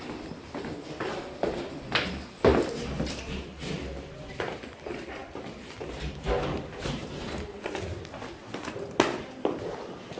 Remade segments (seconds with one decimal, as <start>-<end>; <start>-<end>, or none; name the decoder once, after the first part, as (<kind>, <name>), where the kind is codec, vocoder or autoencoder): none